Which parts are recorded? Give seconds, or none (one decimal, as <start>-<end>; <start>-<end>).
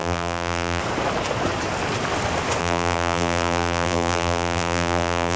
0.8-2.6